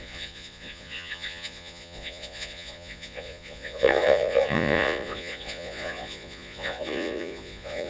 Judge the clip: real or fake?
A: fake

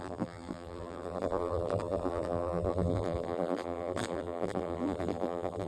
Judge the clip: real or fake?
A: fake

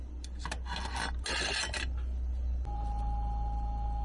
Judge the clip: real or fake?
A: real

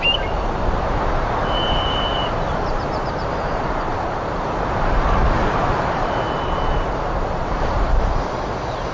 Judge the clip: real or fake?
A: fake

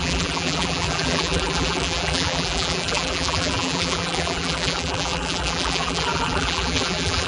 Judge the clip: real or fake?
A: fake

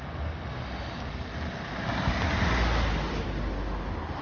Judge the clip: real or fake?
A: real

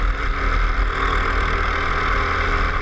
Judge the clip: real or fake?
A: real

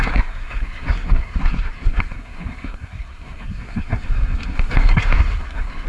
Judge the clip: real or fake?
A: fake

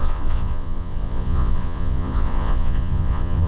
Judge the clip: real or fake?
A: fake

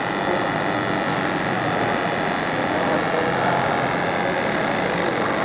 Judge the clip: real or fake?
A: real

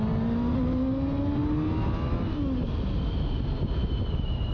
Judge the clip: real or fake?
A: real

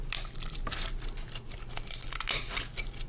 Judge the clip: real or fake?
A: real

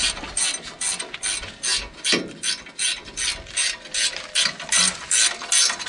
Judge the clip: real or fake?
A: real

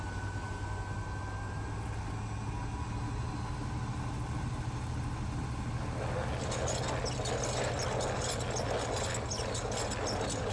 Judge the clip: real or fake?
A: real